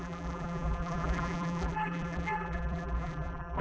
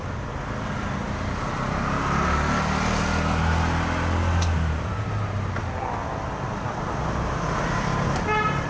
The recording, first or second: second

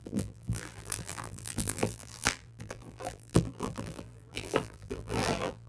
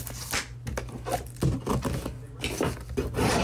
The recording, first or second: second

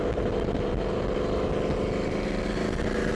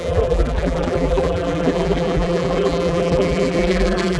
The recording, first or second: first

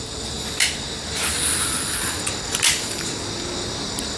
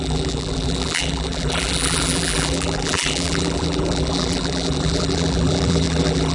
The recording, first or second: first